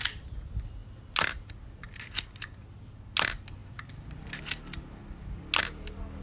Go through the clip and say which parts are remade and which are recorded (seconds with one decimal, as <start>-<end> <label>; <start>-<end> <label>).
0.0-6.2 recorded